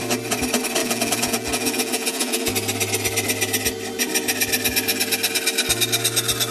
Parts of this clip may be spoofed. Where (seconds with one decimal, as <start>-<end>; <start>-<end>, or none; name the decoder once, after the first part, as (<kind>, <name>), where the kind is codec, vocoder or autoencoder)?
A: 0.8-2.5 (vocoder, Vocos)